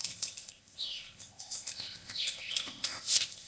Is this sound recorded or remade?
remade